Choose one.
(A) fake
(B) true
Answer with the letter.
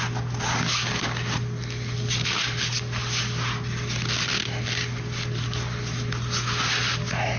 B